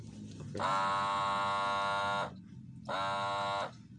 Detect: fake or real real